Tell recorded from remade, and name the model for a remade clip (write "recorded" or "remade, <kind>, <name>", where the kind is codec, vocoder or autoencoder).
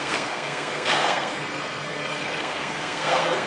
remade, codec, SNAC